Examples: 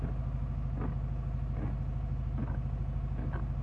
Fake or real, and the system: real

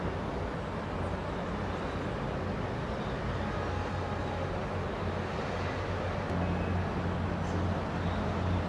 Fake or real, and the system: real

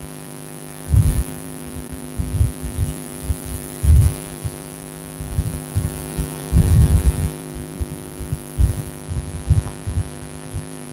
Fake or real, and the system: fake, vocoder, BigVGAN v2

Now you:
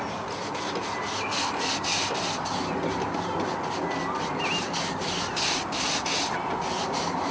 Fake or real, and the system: real